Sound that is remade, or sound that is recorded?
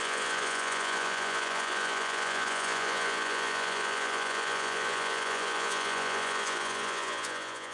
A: remade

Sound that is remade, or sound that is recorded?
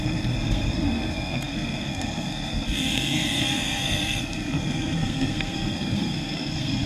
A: remade